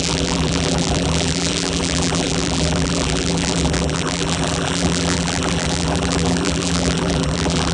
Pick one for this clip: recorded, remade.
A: remade